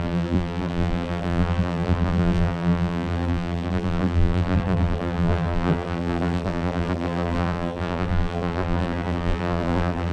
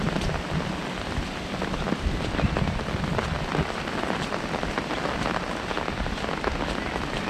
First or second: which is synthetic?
first